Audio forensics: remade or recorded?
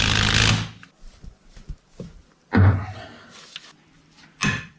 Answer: recorded